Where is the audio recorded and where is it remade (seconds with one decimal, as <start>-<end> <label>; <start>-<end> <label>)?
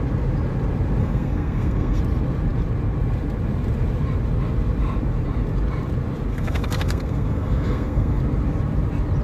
0.0-1.0 recorded; 1.0-2.0 remade; 2.0-6.3 recorded; 6.3-8.2 remade; 8.2-9.2 recorded